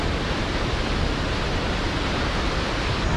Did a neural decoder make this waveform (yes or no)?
no